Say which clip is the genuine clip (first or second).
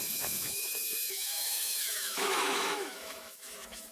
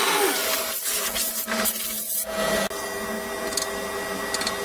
second